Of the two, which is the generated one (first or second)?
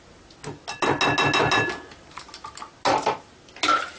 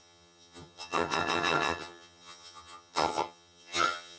second